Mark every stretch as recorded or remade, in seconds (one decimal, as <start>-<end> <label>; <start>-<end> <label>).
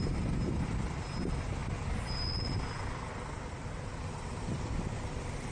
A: 0.0-5.5 recorded